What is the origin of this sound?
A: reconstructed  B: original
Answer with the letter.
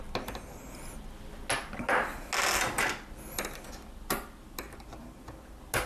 B